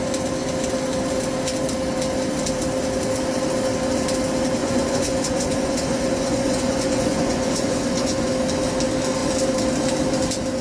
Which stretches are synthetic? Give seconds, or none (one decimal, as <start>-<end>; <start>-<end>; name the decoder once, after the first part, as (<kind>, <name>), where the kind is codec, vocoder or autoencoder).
4.6-8.3 (vocoder, Vocos)